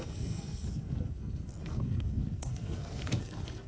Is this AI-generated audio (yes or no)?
yes